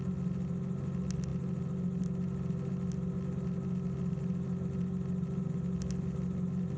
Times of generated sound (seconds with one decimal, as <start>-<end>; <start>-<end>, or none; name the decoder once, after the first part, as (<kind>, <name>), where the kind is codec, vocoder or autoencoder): none

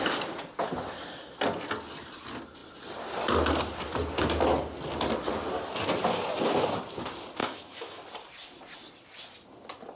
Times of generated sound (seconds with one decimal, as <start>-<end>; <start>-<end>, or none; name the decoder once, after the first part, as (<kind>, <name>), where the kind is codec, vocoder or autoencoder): 7.4-8.0 (autoencoder, DAC-VAE)

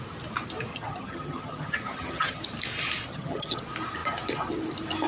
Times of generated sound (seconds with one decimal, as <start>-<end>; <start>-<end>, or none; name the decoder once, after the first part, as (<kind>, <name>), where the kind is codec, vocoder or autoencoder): 0.7-2.4 (vocoder, HiFi-GAN); 3.1-3.6